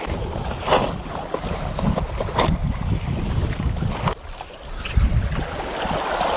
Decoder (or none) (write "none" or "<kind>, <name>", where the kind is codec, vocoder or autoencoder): none